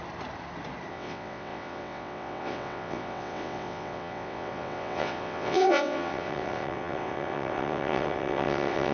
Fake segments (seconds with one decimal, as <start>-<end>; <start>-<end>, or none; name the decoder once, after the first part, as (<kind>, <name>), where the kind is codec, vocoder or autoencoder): 0.9-8.9 (vocoder, WaveNeXt)